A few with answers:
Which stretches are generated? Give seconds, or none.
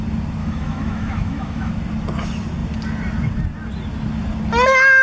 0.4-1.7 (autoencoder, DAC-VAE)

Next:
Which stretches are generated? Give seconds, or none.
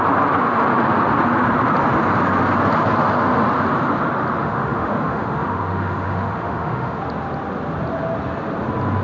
4.4-7.0 (autoencoder, DAC-VAE)